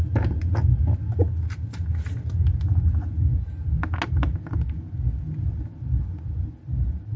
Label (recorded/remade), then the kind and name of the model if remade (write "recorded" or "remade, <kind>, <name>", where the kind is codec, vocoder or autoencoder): recorded